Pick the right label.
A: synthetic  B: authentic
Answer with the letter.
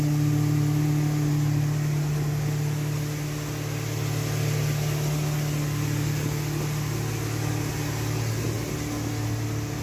B